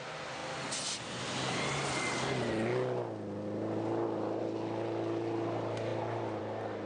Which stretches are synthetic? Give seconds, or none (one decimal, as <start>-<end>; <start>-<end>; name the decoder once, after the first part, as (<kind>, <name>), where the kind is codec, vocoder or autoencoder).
none